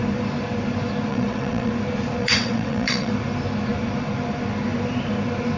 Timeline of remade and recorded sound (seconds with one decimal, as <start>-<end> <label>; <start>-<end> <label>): 0.0-1.1 recorded; 1.1-1.7 remade; 1.7-2.2 recorded; 2.2-3.1 remade; 3.1-5.6 recorded